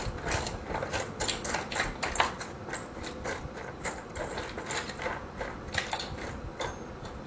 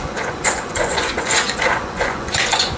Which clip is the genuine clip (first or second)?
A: first